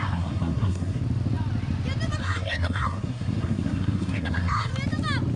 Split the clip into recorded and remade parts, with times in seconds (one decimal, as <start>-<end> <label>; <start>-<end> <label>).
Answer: 0.0-1.0 remade; 1.0-2.2 recorded; 2.2-4.7 remade; 4.7-5.4 recorded